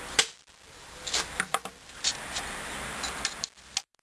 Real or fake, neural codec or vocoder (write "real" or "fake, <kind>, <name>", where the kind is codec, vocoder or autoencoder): real